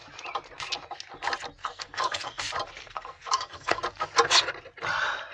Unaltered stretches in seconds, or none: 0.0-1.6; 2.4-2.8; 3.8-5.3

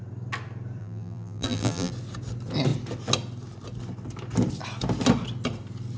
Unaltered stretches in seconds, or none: 0.0-0.8; 1.9-6.0

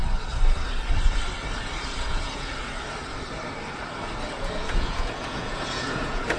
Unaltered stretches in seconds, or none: 0.0-2.0; 2.5-4.4